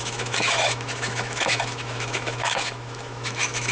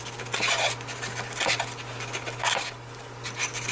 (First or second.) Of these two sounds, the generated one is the first